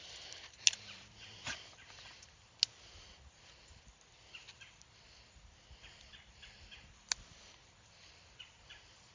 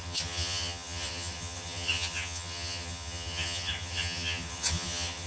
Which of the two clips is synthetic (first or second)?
second